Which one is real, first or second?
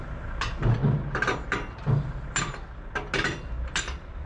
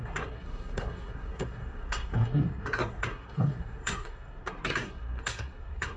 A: first